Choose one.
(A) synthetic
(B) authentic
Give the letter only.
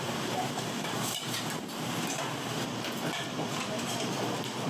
A